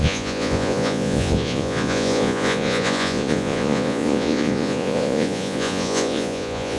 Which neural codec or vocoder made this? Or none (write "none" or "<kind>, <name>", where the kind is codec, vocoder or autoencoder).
vocoder, Vocos